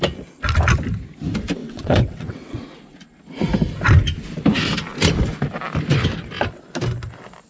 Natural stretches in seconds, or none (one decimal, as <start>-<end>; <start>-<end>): 0.0-1.6; 2.6-7.5